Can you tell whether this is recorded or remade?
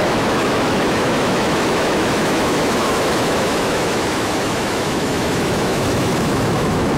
remade